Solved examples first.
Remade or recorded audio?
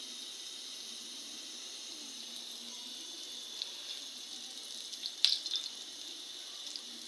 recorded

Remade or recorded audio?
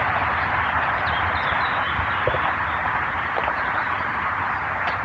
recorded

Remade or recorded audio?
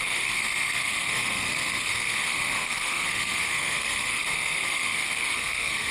remade